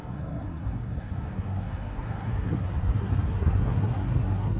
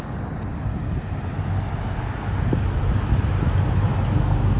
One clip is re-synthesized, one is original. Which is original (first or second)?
second